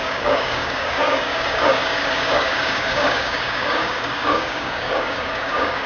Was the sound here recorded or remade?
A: remade